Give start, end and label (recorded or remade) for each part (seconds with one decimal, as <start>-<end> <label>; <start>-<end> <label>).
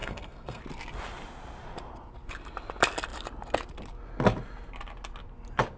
0.0-0.6 remade; 0.6-5.8 recorded